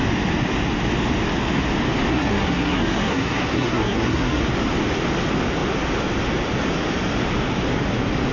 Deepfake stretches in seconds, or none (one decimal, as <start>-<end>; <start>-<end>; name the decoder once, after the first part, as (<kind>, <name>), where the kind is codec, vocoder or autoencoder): 2.1-4.4 (codec, SNAC)